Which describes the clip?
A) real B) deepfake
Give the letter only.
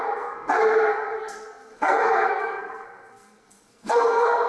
B